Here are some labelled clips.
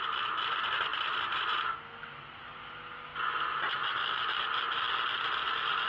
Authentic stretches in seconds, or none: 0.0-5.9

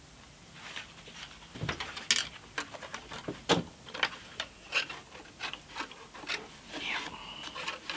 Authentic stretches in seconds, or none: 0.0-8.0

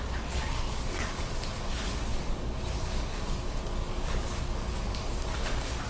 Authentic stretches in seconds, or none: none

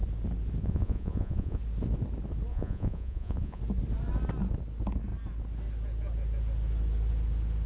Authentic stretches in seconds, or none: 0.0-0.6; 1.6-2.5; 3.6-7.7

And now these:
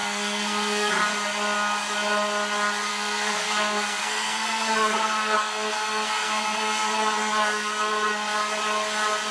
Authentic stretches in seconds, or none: 0.9-2.9; 7.9-9.3